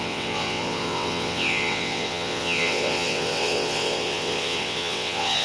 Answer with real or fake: fake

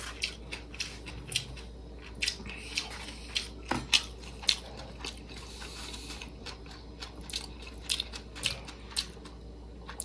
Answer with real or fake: real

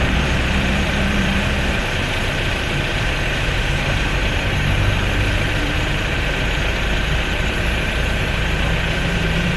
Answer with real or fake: fake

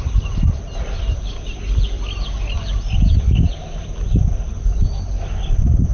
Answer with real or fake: real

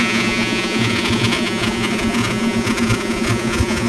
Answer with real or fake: fake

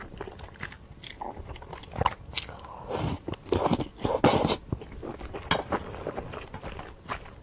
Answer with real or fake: real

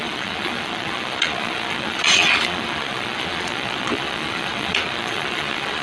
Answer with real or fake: fake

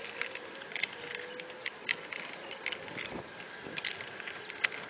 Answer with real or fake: real